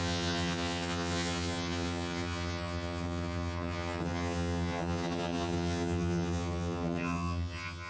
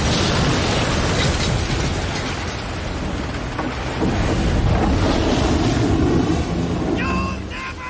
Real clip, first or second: second